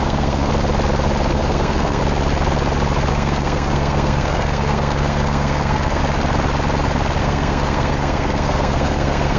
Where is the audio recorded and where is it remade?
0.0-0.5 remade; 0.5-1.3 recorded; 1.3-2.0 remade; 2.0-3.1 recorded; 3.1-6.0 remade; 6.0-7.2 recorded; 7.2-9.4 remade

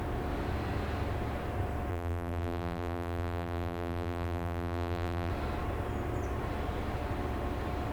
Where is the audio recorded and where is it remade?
0.0-1.9 recorded; 1.9-5.3 remade; 5.3-7.9 recorded

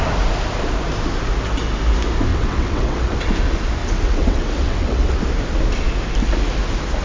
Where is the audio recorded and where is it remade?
0.0-2.3 recorded; 2.3-3.1 remade; 3.1-3.8 recorded; 3.8-5.2 remade; 5.2-7.0 recorded

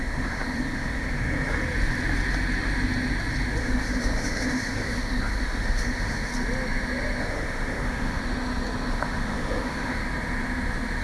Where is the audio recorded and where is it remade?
0.0-1.6 remade; 1.6-3.6 recorded; 3.6-6.3 remade; 6.3-7.2 recorded; 7.2-8.2 remade; 8.2-8.9 recorded; 8.9-10.0 remade; 10.0-11.0 recorded

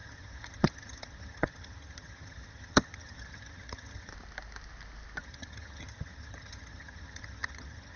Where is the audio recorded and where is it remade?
0.0-4.1 remade; 4.1-5.2 recorded; 5.2-8.0 remade

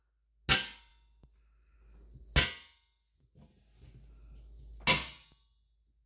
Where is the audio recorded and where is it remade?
0.0-6.1 recorded

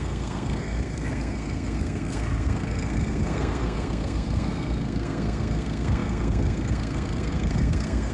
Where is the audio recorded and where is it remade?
0.0-8.1 remade

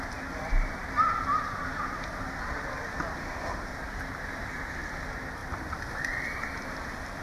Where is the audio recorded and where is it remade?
0.0-3.2 recorded; 3.2-3.7 remade; 3.7-7.2 recorded